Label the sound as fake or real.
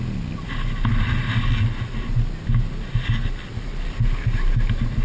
real